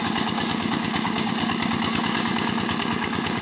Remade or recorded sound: remade